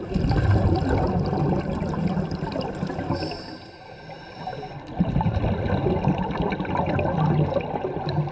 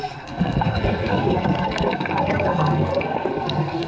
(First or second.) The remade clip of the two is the second